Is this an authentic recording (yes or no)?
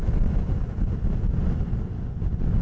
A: yes